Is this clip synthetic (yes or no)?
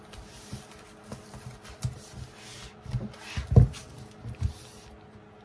no